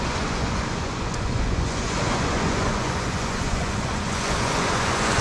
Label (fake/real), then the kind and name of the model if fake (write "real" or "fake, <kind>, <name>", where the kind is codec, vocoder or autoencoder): fake, vocoder, Vocos